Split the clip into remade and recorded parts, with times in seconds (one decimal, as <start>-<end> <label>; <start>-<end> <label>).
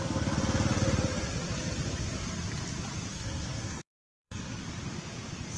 0.0-3.1 recorded; 3.1-4.6 remade; 4.6-5.6 recorded